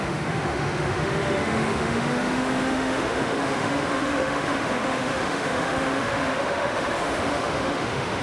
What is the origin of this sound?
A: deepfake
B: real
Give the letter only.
A